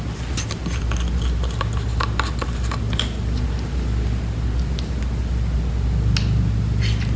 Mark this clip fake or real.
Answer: real